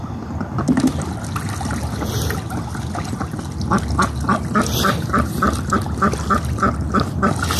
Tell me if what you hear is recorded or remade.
recorded